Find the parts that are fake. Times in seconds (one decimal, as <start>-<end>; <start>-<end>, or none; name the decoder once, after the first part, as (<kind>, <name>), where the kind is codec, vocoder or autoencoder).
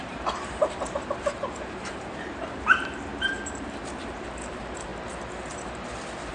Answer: 0.0-4.9 (vocoder, BigVGAN v2)